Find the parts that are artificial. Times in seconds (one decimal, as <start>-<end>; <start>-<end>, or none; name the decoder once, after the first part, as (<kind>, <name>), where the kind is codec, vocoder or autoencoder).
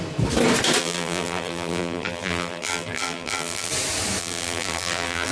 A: 0.8-3.7 (vocoder, BigVGAN v2); 4.2-5.3